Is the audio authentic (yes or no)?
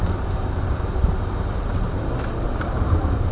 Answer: no